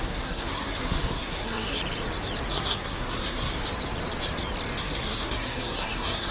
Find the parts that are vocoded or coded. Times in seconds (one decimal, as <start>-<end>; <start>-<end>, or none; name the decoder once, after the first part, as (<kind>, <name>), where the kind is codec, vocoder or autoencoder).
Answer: 0.0-1.8 (codec, SNAC); 2.5-3.5; 4.8-6.3